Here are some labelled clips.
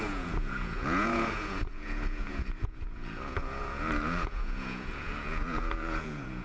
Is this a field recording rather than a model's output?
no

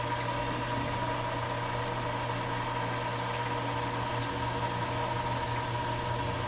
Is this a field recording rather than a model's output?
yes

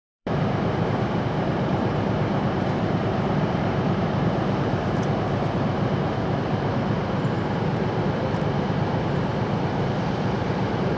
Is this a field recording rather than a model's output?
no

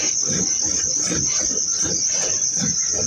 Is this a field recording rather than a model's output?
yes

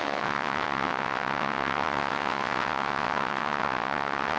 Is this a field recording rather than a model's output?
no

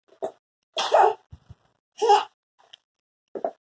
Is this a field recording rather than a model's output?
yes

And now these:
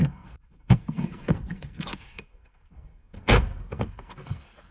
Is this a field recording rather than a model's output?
no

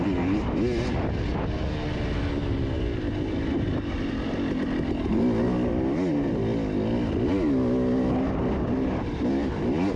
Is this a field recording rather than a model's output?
yes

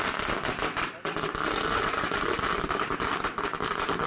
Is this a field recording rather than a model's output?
yes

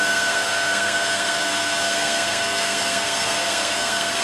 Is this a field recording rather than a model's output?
no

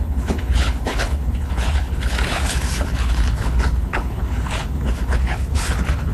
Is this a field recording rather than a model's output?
no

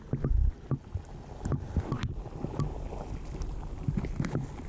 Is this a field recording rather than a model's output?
yes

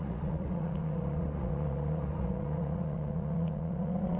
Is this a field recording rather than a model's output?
no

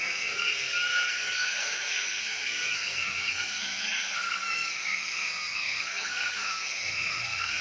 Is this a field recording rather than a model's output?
no